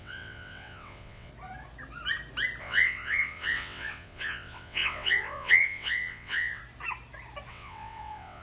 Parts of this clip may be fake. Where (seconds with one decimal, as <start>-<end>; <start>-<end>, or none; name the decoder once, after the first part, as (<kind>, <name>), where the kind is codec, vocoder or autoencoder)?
0.0-1.3 (vocoder, WaveNeXt); 2.6-6.6; 7.5-8.4